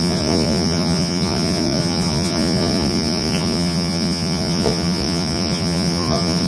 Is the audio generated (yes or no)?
yes